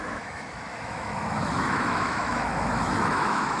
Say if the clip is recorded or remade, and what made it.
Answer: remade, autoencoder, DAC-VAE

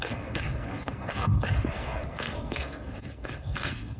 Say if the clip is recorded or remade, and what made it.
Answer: remade, codec, SNAC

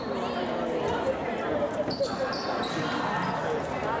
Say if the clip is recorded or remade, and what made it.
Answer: recorded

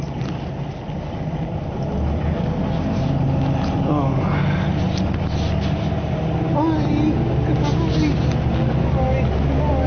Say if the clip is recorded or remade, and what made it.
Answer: recorded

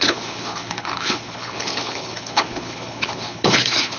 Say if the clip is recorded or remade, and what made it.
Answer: remade, codec, HILCodec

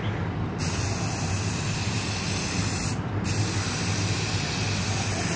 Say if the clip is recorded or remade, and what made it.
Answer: recorded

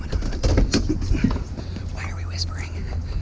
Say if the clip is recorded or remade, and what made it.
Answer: recorded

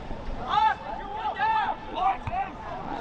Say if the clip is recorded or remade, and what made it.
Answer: remade, vocoder, Vocos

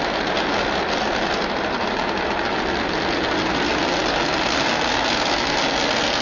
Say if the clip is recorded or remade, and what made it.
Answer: recorded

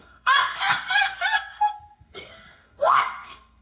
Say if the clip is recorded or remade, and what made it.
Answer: remade, codec, SNAC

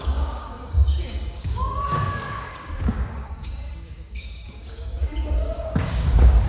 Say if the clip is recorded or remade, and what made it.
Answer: remade, codec, DAC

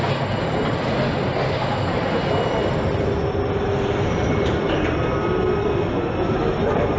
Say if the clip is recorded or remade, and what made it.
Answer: recorded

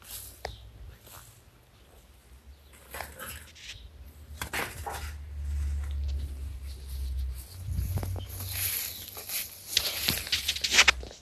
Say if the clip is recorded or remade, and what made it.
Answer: recorded